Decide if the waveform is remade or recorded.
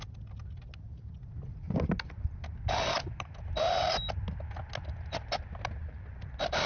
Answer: recorded